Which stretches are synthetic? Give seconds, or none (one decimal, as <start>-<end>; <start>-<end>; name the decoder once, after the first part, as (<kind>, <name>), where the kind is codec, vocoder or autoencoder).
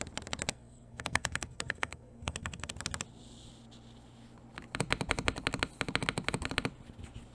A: 0.5-2.7 (codec, SNAC)